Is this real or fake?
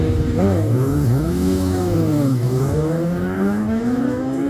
fake